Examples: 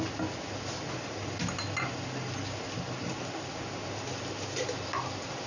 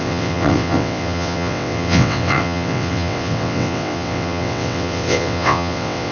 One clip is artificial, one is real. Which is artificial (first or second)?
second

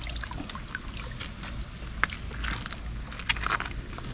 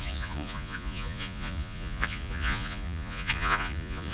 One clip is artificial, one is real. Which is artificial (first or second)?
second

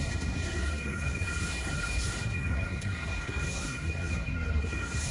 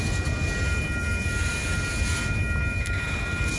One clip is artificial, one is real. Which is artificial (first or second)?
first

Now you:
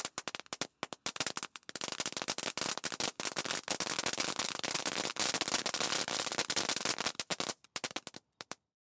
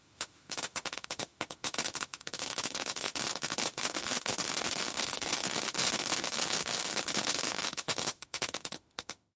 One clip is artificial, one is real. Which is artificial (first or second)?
second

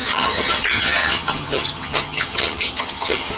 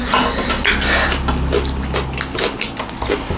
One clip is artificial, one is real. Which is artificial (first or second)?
first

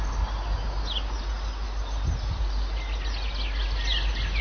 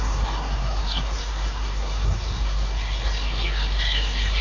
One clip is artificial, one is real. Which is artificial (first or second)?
second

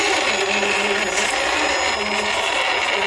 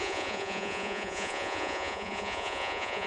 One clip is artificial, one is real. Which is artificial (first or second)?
second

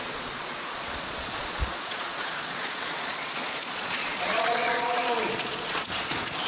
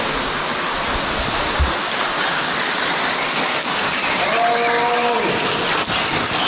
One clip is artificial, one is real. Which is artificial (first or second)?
first